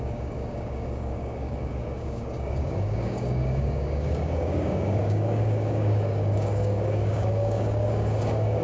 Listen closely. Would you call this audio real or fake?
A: fake